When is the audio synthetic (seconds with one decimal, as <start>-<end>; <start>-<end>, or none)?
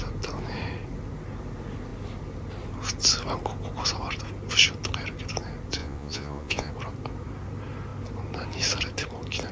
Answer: 5.8-6.7